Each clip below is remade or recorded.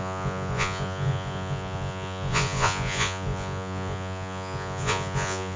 remade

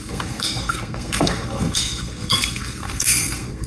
remade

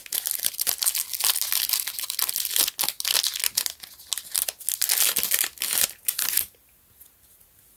recorded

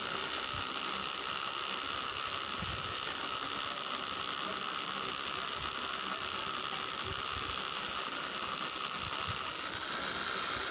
recorded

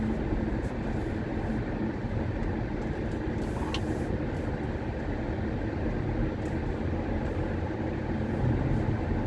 recorded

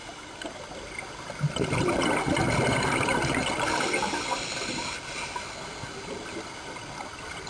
recorded